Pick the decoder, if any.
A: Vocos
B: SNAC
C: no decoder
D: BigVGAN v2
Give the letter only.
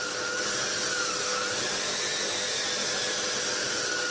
C